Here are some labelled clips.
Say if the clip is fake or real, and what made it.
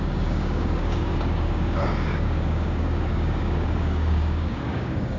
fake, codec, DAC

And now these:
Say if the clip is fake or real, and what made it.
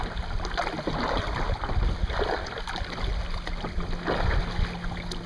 real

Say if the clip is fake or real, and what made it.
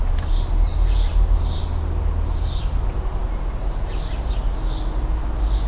real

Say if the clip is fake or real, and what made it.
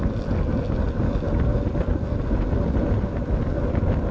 real